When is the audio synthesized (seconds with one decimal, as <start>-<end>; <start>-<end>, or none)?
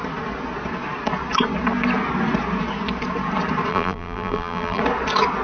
3.7-4.8